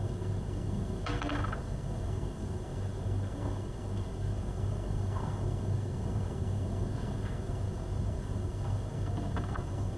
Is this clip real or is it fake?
fake